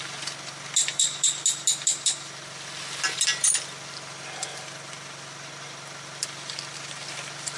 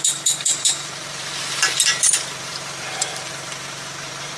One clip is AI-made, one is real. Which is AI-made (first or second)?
second